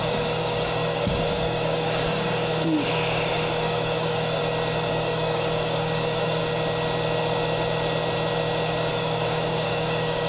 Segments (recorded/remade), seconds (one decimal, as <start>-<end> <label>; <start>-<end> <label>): 0.0-4.4 remade; 4.4-4.9 recorded; 4.9-6.4 remade; 6.4-8.9 recorded; 8.9-10.3 remade